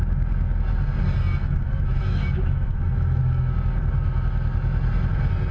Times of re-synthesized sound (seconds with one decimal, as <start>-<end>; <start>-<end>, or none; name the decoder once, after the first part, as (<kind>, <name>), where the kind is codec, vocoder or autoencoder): 1.4-3.2 (autoencoder, DAC-VAE)